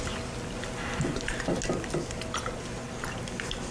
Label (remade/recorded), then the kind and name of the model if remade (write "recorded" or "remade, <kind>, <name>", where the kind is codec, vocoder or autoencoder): recorded